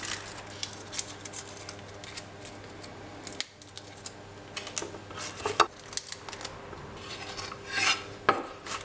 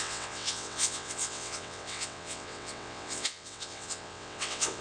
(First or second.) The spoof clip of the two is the second